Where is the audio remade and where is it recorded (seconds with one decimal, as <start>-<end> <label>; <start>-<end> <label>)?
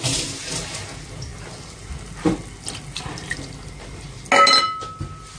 0.0-5.4 recorded